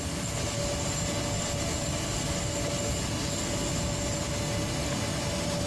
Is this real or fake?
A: real